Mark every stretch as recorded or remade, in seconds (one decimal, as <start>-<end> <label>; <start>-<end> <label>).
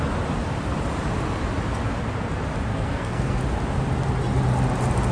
0.0-2.7 recorded; 2.7-3.4 remade; 3.4-5.1 recorded